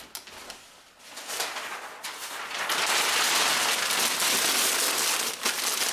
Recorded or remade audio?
recorded